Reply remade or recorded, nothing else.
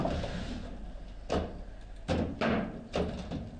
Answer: recorded